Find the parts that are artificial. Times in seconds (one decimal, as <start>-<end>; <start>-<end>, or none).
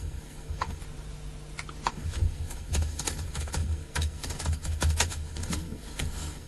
0.0-0.8; 1.9-6.5